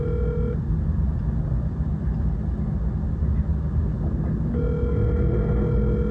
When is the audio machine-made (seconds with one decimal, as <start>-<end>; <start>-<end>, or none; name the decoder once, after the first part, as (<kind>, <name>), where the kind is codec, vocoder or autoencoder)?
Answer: none